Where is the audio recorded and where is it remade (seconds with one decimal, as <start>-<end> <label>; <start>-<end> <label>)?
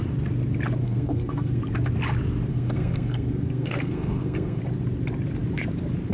0.0-0.8 recorded; 0.8-1.6 remade; 1.6-2.5 recorded; 2.5-4.6 remade; 4.6-6.1 recorded